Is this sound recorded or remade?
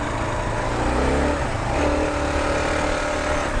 recorded